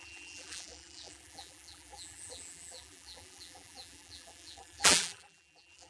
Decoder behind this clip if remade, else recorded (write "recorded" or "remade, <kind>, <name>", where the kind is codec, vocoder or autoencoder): remade, vocoder, BigVGAN v2